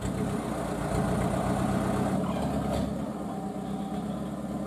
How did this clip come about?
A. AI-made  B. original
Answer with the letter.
B